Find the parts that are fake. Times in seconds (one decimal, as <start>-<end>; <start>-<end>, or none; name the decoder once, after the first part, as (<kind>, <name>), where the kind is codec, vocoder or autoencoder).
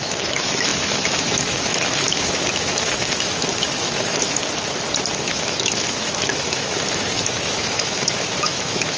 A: 0.0-4.4 (autoencoder, DAC-VAE); 5.2-9.0